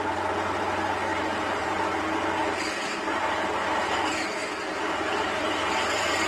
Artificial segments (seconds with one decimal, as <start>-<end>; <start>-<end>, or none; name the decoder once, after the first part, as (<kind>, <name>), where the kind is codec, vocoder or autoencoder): 1.1-1.8 (vocoder, BigVGAN v2); 2.4-6.3